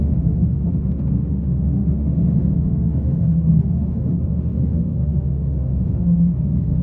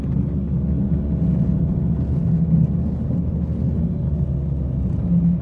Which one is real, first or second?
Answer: second